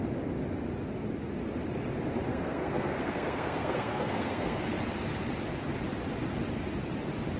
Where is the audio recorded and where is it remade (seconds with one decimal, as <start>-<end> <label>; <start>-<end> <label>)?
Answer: 0.0-2.3 recorded; 2.3-4.6 remade; 4.6-7.4 recorded